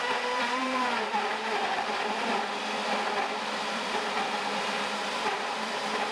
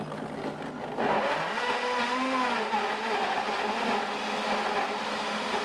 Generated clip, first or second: first